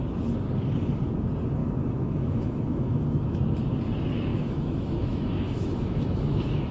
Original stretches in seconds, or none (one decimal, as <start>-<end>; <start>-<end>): 0.0-1.6; 3.4-4.3